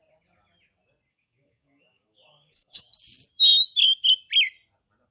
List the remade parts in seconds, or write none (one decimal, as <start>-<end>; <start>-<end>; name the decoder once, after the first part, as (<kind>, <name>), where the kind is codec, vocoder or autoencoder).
1.1-2.8 (codec, DAC)